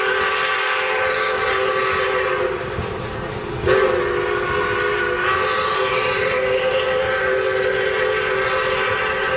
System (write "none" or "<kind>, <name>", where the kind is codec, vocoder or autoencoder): none